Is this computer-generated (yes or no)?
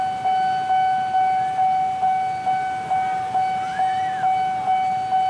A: no